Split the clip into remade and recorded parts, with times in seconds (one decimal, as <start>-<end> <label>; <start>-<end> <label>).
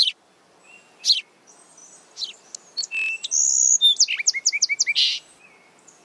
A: 0.0-6.0 recorded